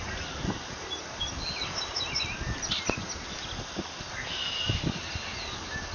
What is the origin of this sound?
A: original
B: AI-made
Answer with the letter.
A